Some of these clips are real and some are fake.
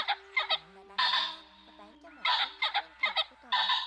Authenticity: real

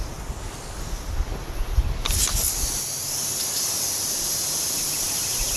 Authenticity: real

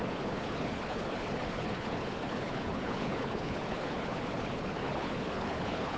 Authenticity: fake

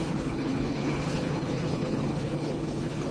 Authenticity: fake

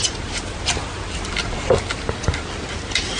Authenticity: real